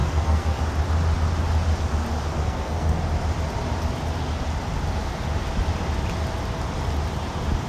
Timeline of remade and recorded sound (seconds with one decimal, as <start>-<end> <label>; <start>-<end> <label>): 0.0-0.6 remade; 0.6-2.4 recorded; 2.4-3.0 remade; 3.0-7.7 recorded